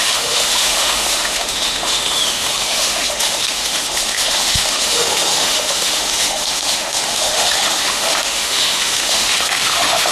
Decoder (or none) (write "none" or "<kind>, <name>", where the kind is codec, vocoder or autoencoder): autoencoder, DAC-VAE